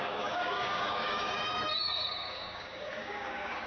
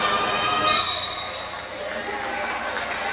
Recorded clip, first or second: second